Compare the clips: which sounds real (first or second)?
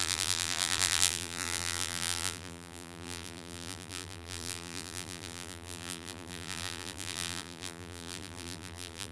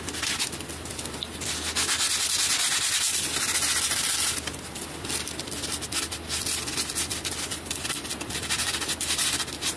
second